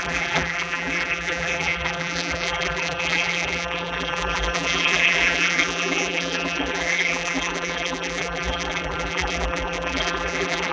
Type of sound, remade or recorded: remade